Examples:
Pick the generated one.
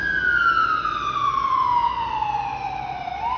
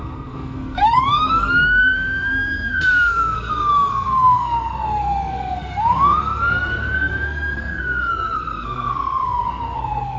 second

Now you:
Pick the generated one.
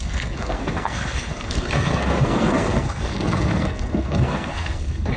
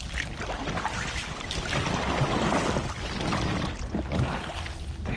first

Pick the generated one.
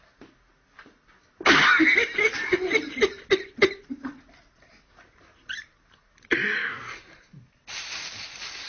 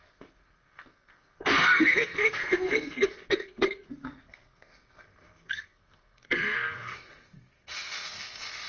second